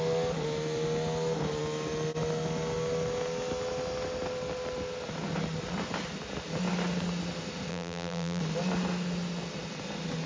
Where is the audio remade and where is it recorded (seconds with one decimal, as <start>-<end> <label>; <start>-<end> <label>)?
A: 0.0-7.7 recorded; 7.7-8.4 remade; 8.4-10.3 recorded